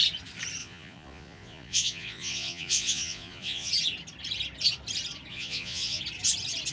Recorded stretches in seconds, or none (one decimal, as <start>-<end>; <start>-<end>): 0.0-0.6; 3.7-5.3; 6.0-6.7